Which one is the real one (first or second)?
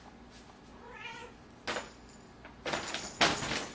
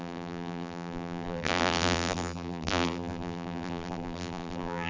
first